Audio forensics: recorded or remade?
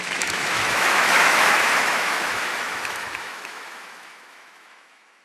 remade